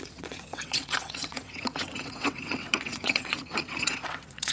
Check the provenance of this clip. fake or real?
fake